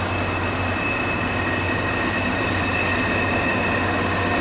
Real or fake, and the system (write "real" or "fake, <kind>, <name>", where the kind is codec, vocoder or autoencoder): real